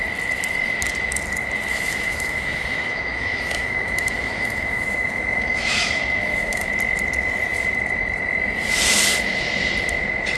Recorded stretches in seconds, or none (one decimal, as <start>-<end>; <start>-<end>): 0.0-1.7; 6.7-10.4